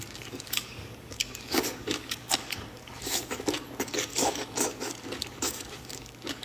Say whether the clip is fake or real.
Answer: fake